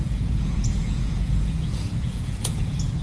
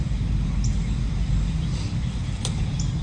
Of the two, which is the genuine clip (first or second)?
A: second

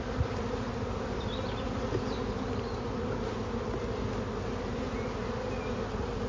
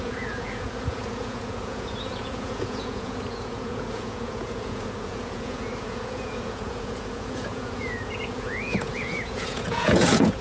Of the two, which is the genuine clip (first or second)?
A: first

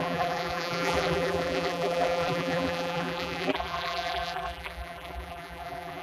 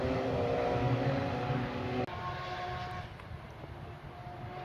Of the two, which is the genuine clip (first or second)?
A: second